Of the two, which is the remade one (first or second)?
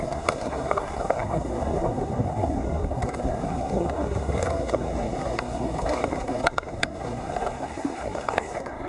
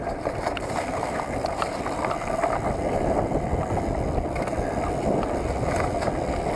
first